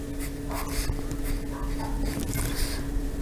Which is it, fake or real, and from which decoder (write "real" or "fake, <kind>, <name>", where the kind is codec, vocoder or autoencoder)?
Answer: real